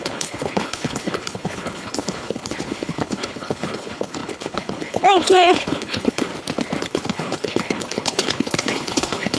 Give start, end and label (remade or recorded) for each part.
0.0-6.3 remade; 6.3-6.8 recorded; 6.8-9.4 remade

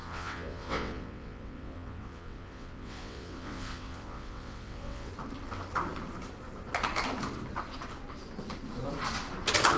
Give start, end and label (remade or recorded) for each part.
0.0-5.1 remade; 5.1-9.8 recorded